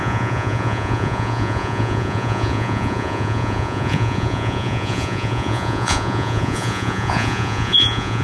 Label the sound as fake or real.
fake